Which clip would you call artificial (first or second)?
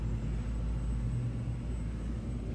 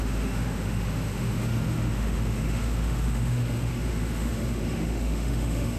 second